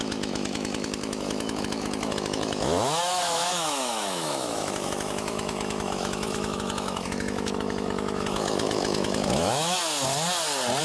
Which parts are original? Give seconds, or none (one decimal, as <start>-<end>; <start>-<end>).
9.8-10.8